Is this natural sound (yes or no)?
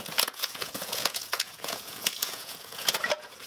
no